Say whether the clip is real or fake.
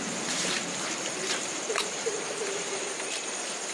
fake